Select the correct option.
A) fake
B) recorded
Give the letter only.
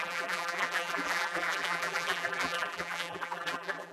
A